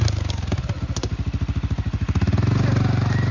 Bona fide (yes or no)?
yes